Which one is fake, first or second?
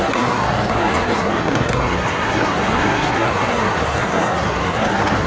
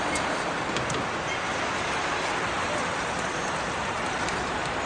first